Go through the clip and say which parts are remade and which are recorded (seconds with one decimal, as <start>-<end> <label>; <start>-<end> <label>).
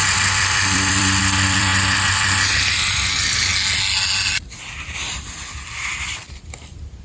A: 0.0-3.5 remade; 3.5-6.4 recorded; 6.4-7.0 remade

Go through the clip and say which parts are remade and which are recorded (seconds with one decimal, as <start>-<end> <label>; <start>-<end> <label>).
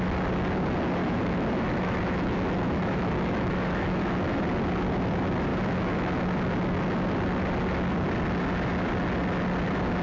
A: 0.0-1.0 recorded; 1.0-4.4 remade; 4.4-5.5 recorded; 5.5-6.2 remade; 6.2-10.0 recorded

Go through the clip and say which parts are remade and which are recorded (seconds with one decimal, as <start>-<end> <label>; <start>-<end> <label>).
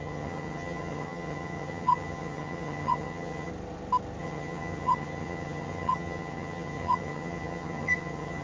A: 0.0-3.5 remade; 3.5-4.2 recorded; 4.2-8.4 remade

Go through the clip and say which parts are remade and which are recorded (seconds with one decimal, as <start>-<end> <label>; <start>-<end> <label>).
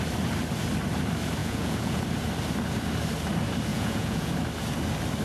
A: 0.0-1.4 recorded; 1.4-2.0 remade; 2.0-3.7 recorded; 3.7-4.3 remade; 4.3-5.2 recorded